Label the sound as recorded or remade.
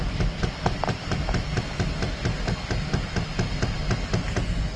recorded